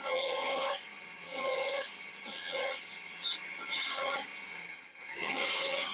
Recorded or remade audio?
remade